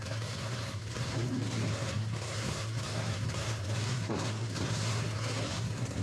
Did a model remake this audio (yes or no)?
yes